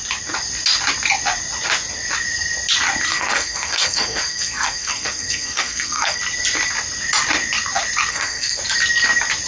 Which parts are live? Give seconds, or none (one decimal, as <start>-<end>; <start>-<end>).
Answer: 0.0-3.1; 6.2-8.1; 8.6-9.5